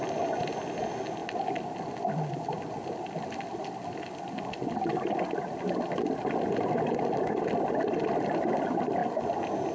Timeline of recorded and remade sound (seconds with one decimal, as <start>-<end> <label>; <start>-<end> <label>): 0.0-9.7 recorded